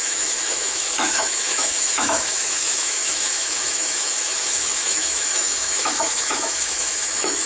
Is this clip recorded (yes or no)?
no